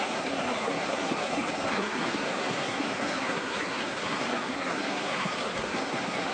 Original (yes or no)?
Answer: no